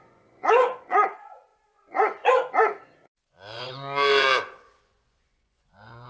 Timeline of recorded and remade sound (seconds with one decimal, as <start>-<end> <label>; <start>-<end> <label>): 0.0-6.1 remade